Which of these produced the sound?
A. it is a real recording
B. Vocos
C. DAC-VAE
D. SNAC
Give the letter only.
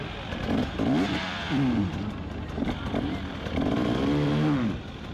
A